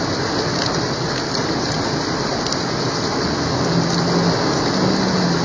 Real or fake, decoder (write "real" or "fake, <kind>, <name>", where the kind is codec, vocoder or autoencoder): real